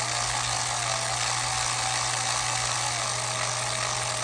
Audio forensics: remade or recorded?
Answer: recorded